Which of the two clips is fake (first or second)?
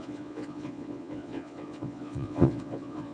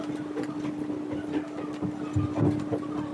first